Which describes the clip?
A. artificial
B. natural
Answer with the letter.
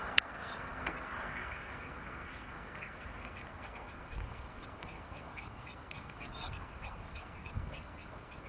A